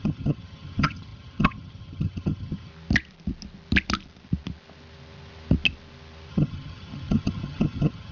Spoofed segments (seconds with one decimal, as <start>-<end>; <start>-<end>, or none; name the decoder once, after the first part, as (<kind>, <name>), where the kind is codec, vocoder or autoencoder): 0.0-2.7 (vocoder, HiFi-GAN); 6.3-8.1